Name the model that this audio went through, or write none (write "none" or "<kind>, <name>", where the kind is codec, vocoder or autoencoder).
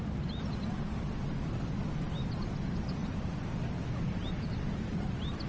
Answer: none